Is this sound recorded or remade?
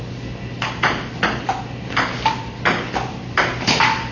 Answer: recorded